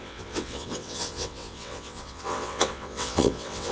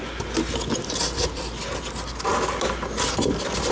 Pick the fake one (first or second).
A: first